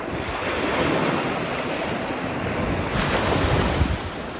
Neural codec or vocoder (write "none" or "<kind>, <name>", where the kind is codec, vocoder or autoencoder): none